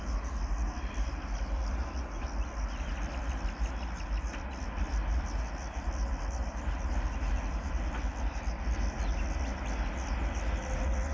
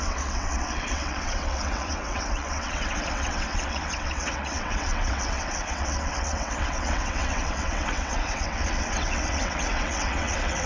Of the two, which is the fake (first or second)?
second